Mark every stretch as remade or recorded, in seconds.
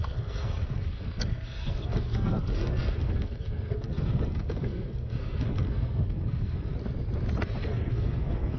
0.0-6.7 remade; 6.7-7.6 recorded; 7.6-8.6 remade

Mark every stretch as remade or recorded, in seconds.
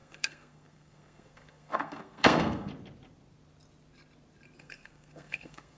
0.0-2.7 remade; 2.7-4.6 recorded; 4.6-5.8 remade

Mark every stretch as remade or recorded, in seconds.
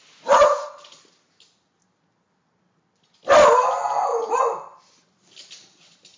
0.0-6.2 recorded